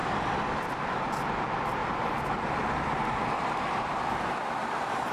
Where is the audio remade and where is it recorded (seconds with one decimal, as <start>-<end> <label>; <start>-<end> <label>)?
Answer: 0.0-1.2 recorded; 1.2-1.8 remade; 1.8-3.7 recorded; 3.7-5.1 remade